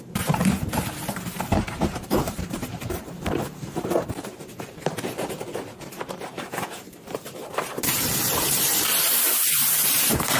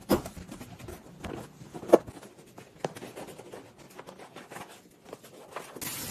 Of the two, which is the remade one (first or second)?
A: first